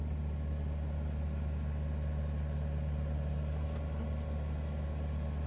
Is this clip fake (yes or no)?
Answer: no